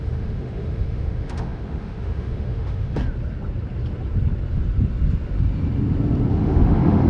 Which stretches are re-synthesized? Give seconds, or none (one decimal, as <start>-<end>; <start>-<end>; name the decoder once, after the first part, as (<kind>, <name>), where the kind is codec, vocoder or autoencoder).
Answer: 0.0-3.0 (autoencoder, DAC-VAE); 6.3-7.1